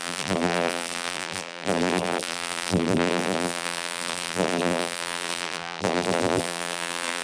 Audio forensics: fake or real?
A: fake